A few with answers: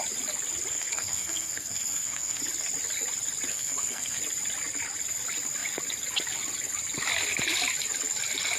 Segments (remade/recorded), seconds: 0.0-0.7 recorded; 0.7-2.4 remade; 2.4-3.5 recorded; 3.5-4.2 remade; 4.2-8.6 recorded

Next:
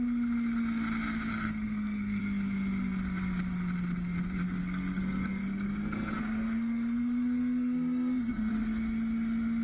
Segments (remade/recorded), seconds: 0.0-1.3 recorded; 1.3-2.2 remade; 2.2-4.6 recorded; 4.6-8.5 remade; 8.5-9.6 recorded

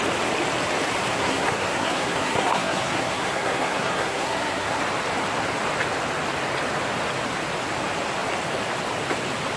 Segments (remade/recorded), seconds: 0.0-1.1 recorded; 1.1-4.8 remade; 4.8-9.6 recorded

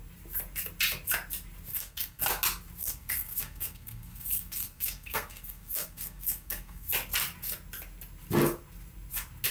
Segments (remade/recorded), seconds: 0.0-1.7 recorded; 1.7-2.2 remade; 2.2-2.8 recorded; 2.8-6.9 remade; 6.9-9.5 recorded